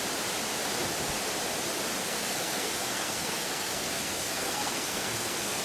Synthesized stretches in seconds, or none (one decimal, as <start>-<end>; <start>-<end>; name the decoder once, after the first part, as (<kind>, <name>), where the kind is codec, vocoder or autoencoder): 2.0-5.6 (codec, SNAC)